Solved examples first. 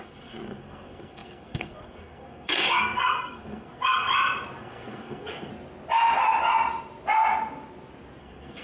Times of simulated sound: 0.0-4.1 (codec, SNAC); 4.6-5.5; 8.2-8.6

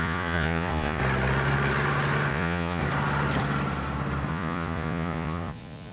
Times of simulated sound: 0.0-1.0 (vocoder, Vocos); 2.3-2.8; 4.3-5.9

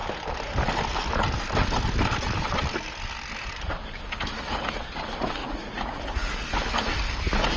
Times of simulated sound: 5.4-6.3 (vocoder, Vocos)

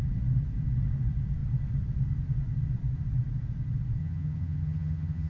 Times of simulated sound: 4.0-5.3 (vocoder, HiFi-GAN)